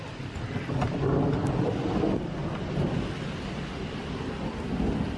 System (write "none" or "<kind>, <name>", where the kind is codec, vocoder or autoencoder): none